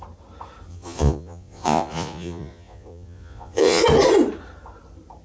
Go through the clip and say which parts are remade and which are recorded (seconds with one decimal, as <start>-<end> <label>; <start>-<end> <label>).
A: 0.0-0.7 recorded; 0.7-3.8 remade; 3.8-5.2 recorded